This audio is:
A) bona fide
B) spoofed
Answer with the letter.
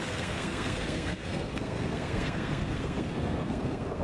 B